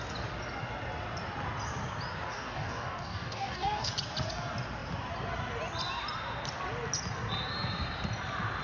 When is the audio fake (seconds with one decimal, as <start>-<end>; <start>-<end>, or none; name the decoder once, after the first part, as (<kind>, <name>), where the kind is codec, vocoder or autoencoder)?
2.3-3.9 (codec, DAC)